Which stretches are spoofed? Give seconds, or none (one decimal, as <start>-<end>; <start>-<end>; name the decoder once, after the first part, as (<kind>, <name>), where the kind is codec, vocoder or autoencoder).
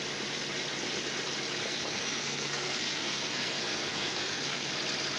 1.6-4.7 (codec, SNAC)